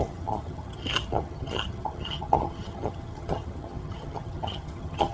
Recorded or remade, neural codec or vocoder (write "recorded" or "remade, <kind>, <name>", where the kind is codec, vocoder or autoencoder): remade, vocoder, HiFi-GAN